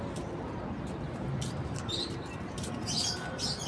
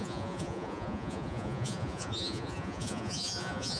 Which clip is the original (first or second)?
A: first